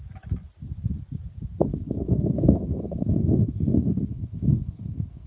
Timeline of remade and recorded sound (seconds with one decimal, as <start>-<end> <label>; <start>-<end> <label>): 0.0-1.7 recorded; 1.7-5.3 remade